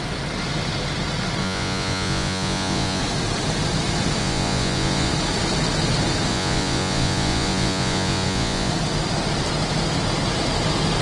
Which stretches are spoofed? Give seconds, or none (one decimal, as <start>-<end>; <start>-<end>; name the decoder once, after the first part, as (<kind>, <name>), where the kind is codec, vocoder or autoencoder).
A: 1.4-3.0 (vocoder, Vocos); 4.2-5.1; 6.3-8.7